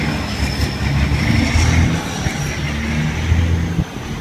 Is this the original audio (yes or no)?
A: yes